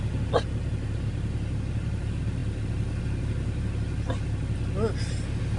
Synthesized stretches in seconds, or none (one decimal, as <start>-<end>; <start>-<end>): none